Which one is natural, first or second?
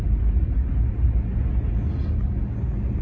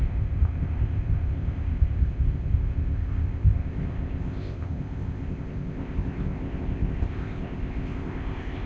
first